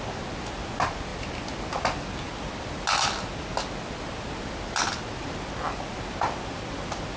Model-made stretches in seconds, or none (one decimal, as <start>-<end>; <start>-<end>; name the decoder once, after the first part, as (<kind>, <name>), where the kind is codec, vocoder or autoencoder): none